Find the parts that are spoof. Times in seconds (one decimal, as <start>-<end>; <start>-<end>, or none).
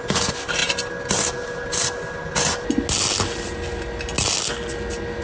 none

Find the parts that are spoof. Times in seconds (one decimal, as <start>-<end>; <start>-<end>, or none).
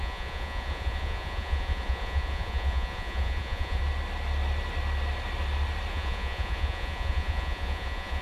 0.0-3.8; 5.9-8.2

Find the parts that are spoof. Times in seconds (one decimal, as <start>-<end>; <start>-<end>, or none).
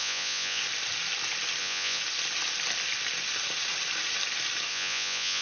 0.0-0.6; 1.6-2.0; 4.7-5.4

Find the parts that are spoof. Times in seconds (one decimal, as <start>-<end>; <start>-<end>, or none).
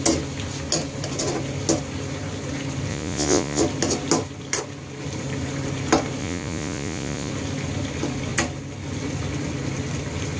2.9-3.6; 6.2-7.3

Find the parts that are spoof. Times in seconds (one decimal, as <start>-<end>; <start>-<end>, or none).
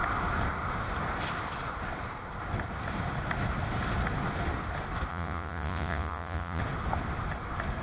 5.1-6.6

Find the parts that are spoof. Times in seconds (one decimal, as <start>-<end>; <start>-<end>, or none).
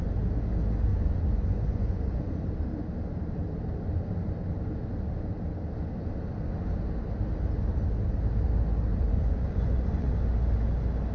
0.9-2.3; 8.9-10.1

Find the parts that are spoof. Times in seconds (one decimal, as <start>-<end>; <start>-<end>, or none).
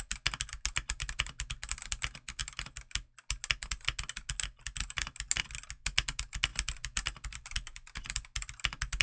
none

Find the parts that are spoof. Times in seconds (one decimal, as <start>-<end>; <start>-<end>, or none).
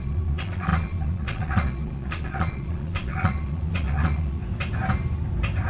0.0-4.4